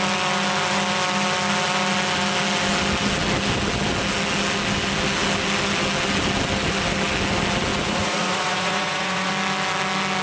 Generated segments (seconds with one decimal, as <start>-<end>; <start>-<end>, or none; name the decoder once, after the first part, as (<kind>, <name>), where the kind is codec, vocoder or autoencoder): 7.7-9.3 (vocoder, Vocos)